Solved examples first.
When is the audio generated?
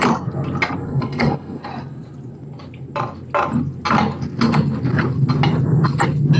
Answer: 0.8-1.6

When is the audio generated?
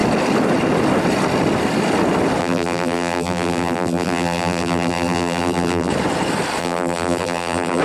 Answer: 2.4-5.9; 6.6-7.8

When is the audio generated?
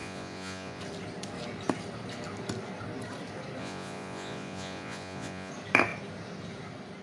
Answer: 0.0-0.8; 3.6-5.5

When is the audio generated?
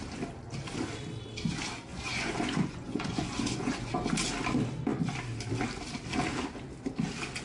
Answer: 1.9-3.9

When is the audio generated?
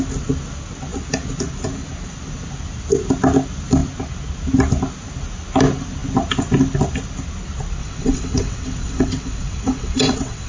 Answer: 7.8-10.5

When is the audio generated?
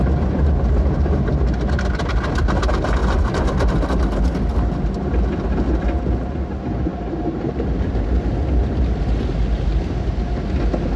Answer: none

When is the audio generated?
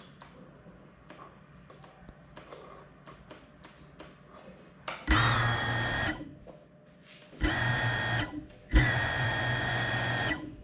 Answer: 7.0-7.7; 8.7-10.6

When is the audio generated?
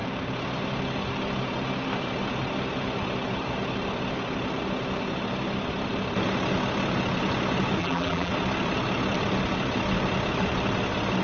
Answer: 7.8-8.3